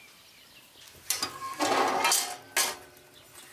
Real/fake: real